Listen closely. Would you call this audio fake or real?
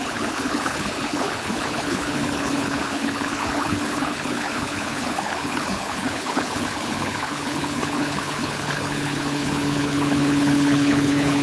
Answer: fake